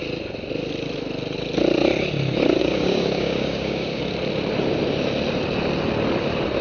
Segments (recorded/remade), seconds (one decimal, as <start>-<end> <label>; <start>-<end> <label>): 0.0-2.6 recorded; 2.6-4.0 remade; 4.0-6.6 recorded